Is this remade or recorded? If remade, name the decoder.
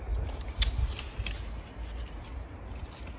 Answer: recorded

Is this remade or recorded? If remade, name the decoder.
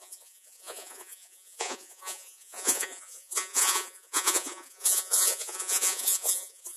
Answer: remade, vocoder, Vocos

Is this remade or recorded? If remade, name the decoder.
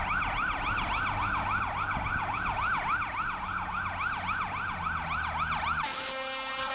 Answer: recorded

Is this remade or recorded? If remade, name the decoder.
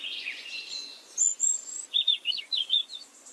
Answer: remade, vocoder, Vocos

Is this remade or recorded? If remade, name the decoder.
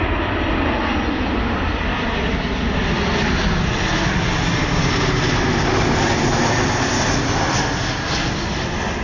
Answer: recorded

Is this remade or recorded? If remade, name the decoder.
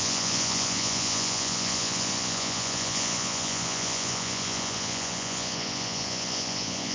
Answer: remade, vocoder, Vocos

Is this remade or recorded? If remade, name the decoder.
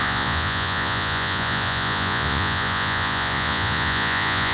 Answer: remade, vocoder, Vocos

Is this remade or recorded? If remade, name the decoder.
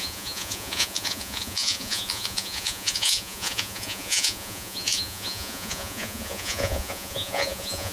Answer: remade, vocoder, Vocos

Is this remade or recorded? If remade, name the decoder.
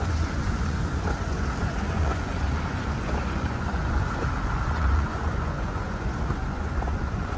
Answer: remade, vocoder, Vocos